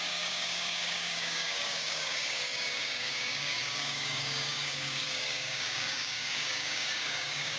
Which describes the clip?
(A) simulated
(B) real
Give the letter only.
A